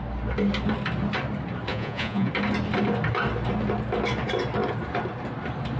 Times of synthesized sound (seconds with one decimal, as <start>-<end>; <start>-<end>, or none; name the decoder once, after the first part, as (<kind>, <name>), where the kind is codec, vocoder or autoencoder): 1.7-2.3 (vocoder, Vocos)